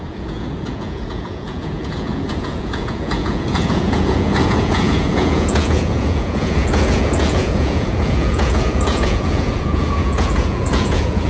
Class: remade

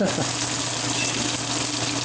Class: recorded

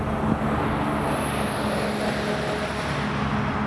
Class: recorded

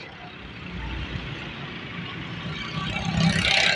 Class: recorded